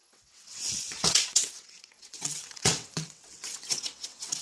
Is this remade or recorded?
remade